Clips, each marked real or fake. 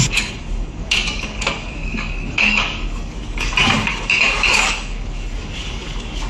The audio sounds fake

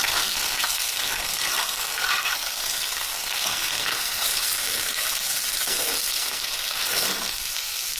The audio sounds fake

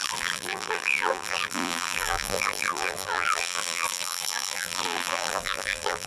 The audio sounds fake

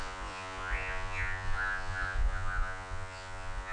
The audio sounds fake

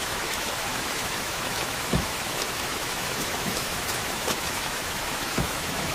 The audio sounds fake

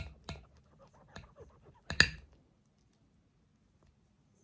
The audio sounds real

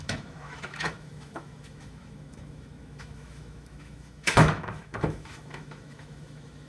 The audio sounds fake